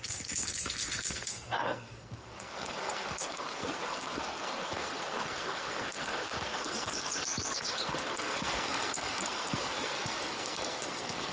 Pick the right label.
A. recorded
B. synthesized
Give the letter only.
B